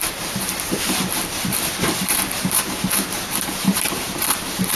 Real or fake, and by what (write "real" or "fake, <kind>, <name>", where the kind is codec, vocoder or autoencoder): fake, vocoder, BigVGAN v2